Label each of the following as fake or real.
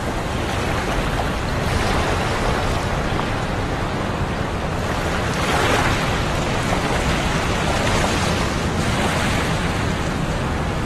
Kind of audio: real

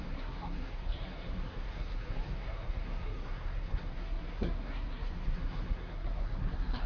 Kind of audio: fake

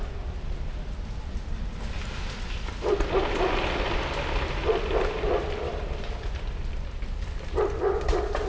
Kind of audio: real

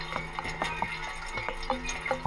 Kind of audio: real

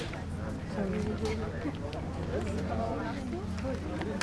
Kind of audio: real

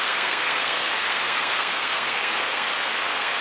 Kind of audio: fake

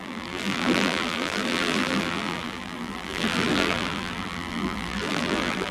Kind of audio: fake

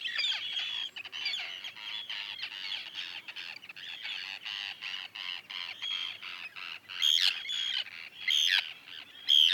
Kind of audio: real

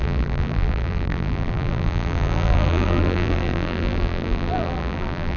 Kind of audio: fake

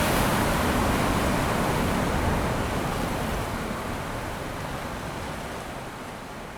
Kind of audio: real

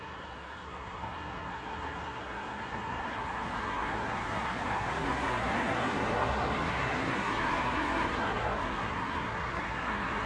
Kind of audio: fake